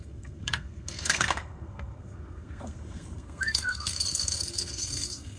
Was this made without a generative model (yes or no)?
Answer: no